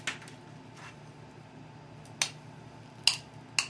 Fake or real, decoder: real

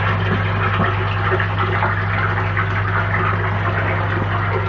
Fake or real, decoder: real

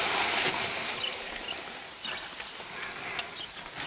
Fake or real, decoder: real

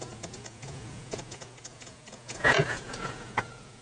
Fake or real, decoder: fake, vocoder, Vocos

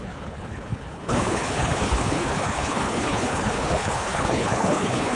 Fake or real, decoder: fake, codec, HILCodec